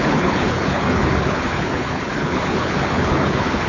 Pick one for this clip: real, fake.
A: fake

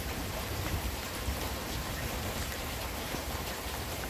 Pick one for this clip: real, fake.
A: fake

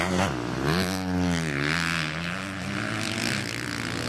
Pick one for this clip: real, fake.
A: real